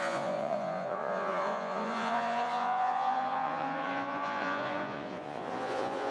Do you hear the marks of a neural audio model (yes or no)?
yes